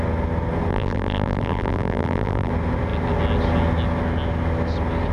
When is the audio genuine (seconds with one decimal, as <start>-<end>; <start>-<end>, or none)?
0.0-0.7; 2.5-5.1